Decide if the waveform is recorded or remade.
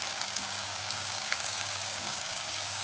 remade